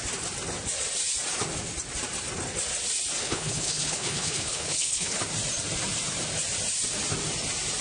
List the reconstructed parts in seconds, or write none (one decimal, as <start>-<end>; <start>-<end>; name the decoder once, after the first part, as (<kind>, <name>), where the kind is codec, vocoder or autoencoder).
3.2-5.2 (codec, HILCodec)